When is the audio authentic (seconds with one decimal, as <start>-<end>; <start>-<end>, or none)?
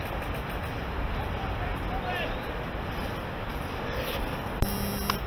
0.0-5.3